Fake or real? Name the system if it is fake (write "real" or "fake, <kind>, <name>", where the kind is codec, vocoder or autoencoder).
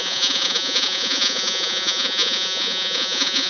fake, vocoder, Vocos